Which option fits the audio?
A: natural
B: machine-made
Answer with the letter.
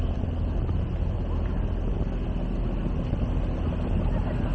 A